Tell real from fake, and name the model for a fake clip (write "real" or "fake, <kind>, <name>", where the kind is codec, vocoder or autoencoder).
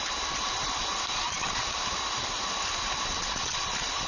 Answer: real